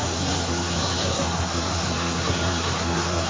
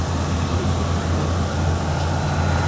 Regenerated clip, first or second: first